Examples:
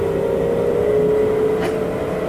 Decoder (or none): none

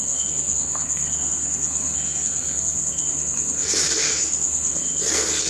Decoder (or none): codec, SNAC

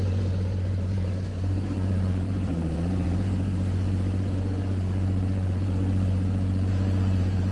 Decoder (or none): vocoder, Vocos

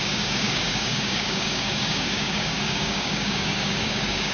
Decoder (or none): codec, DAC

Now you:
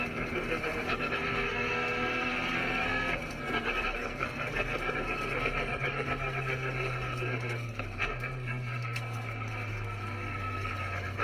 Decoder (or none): codec, SNAC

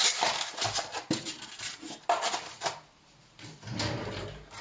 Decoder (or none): none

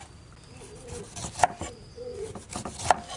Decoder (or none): none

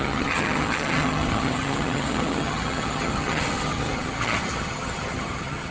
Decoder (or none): vocoder, HiFi-GAN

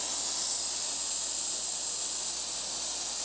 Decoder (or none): none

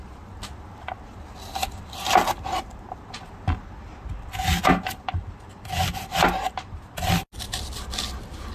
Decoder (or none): none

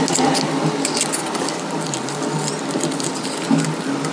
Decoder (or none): none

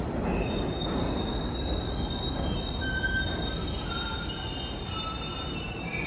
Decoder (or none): none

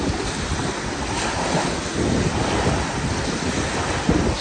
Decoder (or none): none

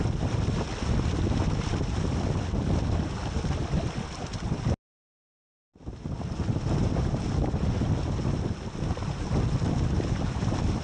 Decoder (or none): none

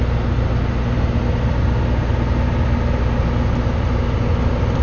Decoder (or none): none